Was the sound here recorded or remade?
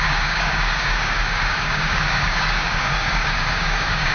remade